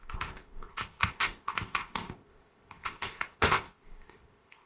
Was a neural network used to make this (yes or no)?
yes